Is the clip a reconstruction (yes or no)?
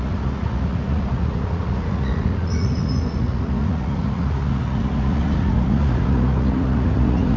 yes